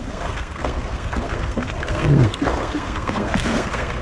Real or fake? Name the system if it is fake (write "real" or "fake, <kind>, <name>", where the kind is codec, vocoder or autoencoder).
fake, codec, SNAC